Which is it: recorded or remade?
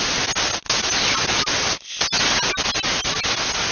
recorded